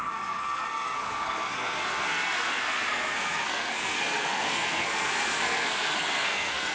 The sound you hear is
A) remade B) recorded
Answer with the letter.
A